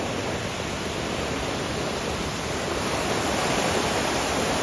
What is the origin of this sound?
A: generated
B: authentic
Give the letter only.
B